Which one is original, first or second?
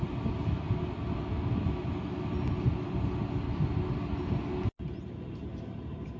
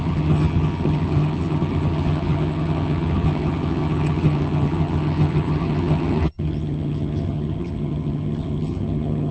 first